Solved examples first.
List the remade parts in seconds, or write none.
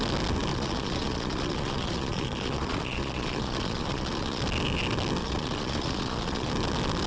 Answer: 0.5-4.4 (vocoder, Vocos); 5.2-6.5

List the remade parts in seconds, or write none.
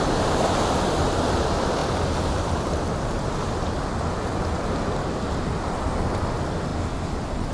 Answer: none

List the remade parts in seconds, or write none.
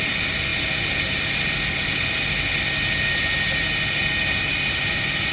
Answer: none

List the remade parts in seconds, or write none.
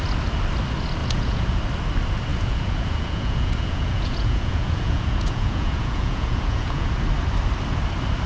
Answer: 1.0-1.6 (vocoder, Vocos); 2.3-6.9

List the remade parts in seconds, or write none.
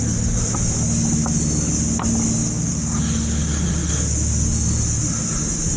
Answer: none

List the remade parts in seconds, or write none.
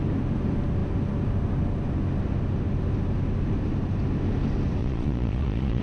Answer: 4.8-5.8 (vocoder, Vocos)